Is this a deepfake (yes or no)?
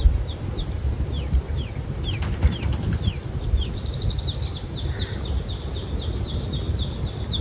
no